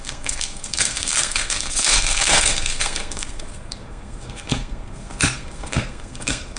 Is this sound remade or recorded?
remade